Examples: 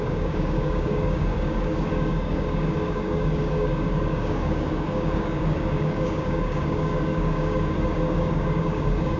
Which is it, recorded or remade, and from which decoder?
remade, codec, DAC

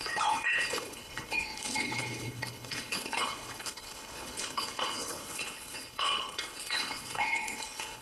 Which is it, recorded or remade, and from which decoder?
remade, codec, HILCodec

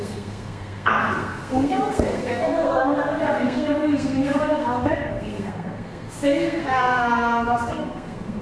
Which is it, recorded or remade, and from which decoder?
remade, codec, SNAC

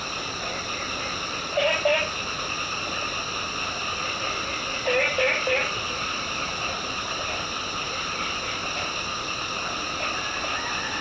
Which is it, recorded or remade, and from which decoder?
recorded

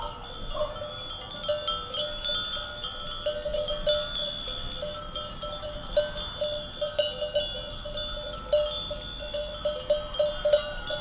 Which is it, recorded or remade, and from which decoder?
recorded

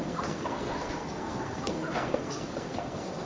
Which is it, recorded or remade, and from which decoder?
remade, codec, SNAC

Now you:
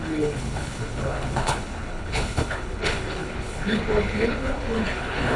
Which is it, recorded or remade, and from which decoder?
remade, codec, HILCodec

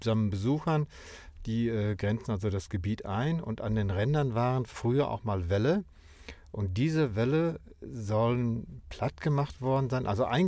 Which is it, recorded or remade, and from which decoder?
recorded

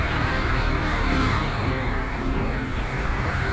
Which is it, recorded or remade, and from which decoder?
remade, codec, DAC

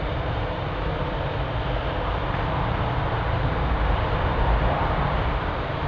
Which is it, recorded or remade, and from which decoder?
remade, vocoder, BigVGAN v2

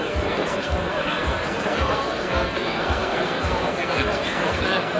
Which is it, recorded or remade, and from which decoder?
remade, codec, SNAC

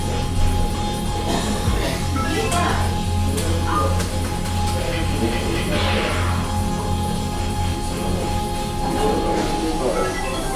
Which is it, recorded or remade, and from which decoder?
recorded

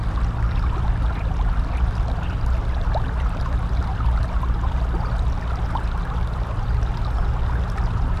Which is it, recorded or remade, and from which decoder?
recorded